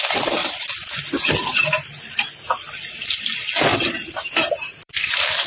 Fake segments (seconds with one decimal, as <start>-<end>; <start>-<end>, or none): 0.4-3.2; 3.7-5.5